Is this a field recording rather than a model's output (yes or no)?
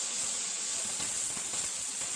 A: no